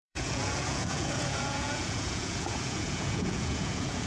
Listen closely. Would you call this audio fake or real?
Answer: fake